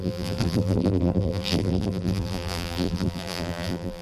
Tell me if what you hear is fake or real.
fake